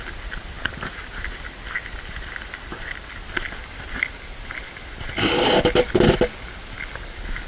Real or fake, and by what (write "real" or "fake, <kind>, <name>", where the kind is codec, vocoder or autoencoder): real